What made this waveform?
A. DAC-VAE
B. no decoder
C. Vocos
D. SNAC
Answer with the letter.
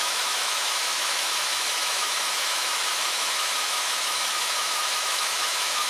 A